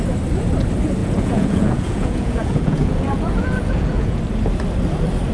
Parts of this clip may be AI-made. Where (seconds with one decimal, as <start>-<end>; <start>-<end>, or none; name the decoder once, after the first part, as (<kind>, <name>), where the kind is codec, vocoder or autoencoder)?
1.0-4.2 (vocoder, Vocos)

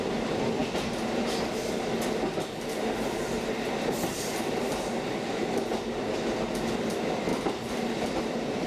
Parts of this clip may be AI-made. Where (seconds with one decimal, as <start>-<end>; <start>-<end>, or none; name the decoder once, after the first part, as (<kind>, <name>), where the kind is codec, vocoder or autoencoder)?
0.6-1.4 (vocoder, BigVGAN v2); 7.3-8.2